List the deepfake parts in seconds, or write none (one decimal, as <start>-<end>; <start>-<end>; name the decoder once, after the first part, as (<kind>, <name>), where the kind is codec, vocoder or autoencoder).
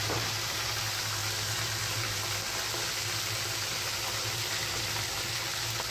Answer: 0.0-0.6 (vocoder, BigVGAN v2)